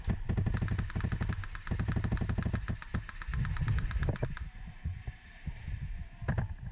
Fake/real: real